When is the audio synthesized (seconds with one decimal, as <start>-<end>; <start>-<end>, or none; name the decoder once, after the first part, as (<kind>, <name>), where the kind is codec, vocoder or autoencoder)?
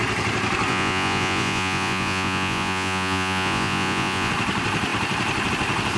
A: 0.7-4.3 (vocoder, Vocos)